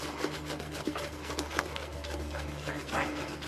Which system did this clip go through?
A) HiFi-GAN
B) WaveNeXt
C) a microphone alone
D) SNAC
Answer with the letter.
D